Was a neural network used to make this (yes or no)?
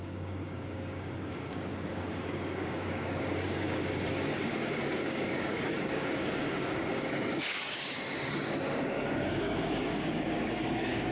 yes